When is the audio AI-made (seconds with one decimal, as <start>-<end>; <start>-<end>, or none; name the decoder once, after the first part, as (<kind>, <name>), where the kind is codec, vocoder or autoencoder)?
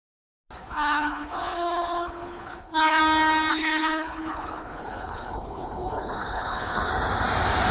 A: 0.6-3.0 (codec, HILCodec); 3.5-6.9